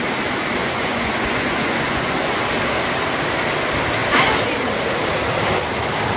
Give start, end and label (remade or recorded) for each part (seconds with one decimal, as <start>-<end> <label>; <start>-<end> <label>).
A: 0.0-0.6 recorded; 0.6-2.4 remade; 2.4-6.2 recorded